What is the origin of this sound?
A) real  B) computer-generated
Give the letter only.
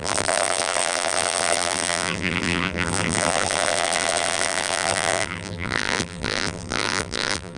B